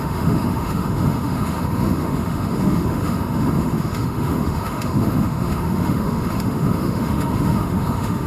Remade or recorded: remade